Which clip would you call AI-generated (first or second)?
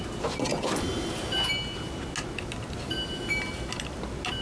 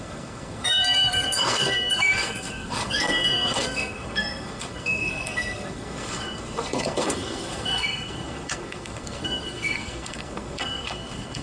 second